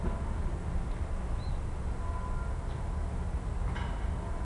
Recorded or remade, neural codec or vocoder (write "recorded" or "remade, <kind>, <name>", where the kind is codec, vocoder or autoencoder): recorded